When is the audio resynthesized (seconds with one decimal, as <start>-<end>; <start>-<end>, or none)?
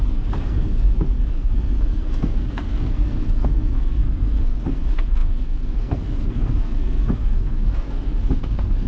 0.0-8.9